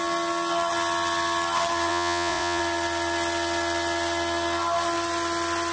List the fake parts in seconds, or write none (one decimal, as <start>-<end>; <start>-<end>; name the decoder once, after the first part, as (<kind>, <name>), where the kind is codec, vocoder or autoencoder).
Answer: 1.9-2.6 (vocoder, Vocos)